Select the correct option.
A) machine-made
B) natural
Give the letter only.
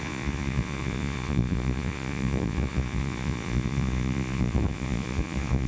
A